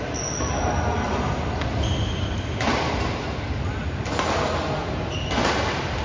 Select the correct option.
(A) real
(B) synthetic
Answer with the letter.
A